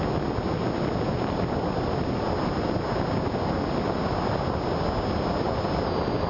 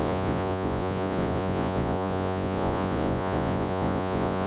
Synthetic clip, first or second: second